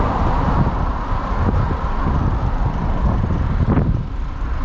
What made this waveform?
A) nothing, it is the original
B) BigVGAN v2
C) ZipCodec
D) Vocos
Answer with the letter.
A